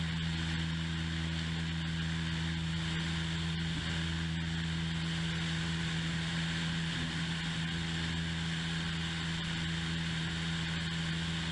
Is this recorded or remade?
recorded